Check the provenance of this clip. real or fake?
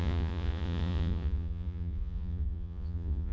fake